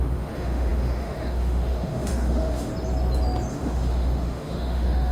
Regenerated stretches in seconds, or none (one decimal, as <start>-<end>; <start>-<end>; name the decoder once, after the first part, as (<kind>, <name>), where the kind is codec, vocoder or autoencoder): 0.0-2.7 (autoencoder, DAC-VAE); 3.5-5.1